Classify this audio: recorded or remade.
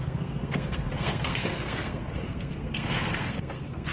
remade